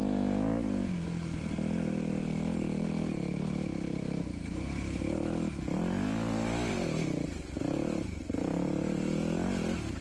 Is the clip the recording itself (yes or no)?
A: yes